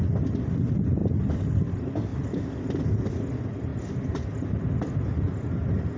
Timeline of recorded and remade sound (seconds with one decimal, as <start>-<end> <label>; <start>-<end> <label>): 0.0-1.0 recorded; 1.0-1.7 remade; 1.7-2.1 recorded; 2.1-3.1 remade; 3.1-3.7 recorded; 3.7-4.5 remade; 4.5-6.0 recorded